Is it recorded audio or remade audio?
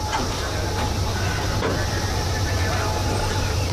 recorded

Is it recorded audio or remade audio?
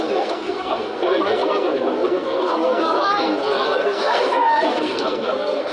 remade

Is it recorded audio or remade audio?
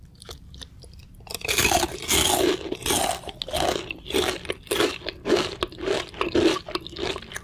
recorded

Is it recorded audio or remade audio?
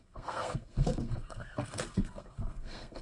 remade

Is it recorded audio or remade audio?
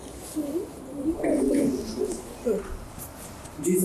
recorded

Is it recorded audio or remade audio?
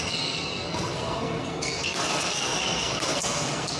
remade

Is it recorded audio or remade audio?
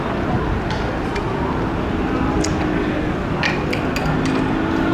recorded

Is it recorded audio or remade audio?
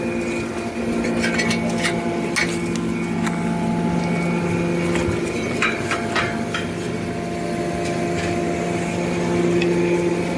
recorded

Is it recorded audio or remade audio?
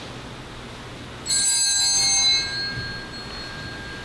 recorded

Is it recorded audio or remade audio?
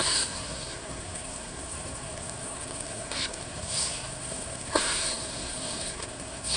remade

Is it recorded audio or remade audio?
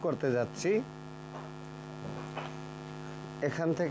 recorded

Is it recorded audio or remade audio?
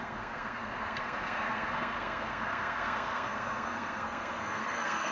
remade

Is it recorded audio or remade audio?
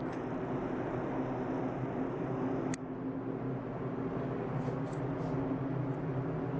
recorded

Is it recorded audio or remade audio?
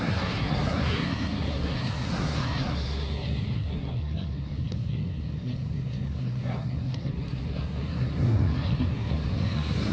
remade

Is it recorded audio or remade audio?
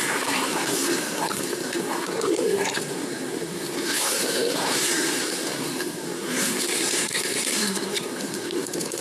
remade